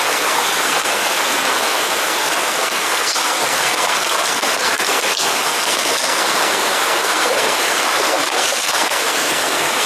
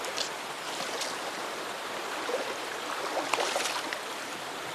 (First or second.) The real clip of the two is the second